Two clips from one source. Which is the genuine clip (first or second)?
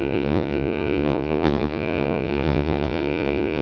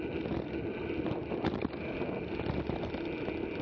second